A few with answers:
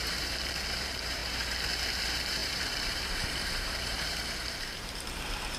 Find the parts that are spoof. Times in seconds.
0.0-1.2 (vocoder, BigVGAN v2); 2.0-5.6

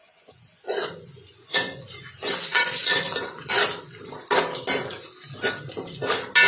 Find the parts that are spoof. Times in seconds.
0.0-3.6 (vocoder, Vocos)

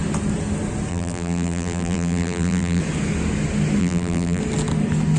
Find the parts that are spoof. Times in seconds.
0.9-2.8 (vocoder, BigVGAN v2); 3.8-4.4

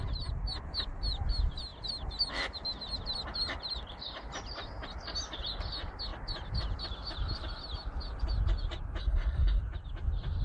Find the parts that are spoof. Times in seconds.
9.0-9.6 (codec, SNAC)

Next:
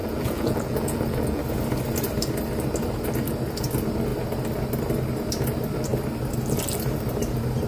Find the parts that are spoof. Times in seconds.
0.0-1.4 (vocoder, Vocos)

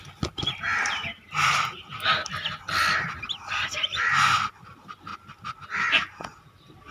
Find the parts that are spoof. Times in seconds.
none